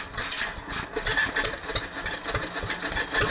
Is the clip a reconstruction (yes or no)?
no